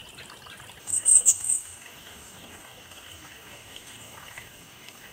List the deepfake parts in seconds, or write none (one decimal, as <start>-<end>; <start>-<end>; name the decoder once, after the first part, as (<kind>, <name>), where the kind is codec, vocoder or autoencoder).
0.8-5.1 (codec, DAC)